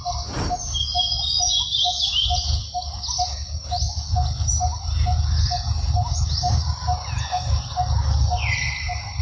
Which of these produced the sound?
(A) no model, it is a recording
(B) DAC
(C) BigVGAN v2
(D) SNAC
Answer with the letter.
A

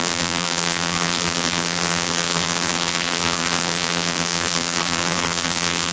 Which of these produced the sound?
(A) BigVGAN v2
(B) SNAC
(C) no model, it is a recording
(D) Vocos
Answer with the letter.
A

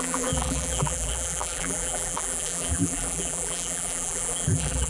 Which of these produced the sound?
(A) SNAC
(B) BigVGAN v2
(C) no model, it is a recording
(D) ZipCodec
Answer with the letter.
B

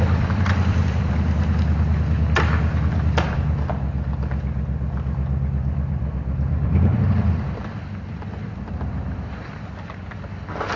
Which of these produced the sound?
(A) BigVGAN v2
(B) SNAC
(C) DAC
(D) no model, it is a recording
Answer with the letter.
A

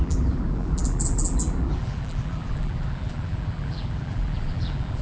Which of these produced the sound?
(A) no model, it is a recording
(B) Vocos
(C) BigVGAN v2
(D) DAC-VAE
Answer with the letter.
C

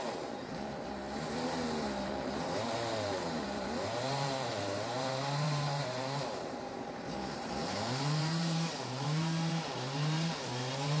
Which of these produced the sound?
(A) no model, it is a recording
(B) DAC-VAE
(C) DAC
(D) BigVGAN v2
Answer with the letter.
D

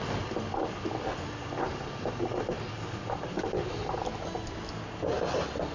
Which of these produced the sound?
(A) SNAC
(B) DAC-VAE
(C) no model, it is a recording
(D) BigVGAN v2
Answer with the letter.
C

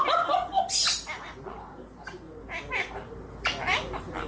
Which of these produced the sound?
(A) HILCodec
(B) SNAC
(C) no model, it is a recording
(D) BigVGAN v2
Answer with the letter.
C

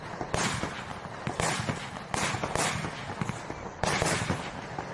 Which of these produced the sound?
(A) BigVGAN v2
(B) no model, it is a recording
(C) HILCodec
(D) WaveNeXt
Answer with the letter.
B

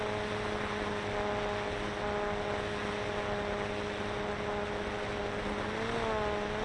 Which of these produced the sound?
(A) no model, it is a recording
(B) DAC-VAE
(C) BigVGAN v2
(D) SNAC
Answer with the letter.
A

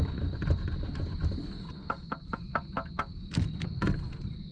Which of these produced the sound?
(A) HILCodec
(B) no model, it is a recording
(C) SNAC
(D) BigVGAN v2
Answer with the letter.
B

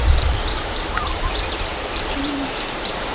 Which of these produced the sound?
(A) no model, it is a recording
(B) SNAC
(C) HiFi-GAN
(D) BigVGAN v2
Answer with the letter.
D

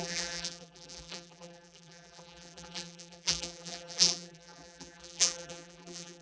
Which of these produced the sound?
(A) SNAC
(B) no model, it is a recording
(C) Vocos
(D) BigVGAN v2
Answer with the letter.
D